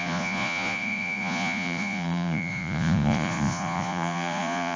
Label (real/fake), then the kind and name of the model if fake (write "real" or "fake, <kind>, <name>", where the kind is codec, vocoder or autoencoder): fake, vocoder, Vocos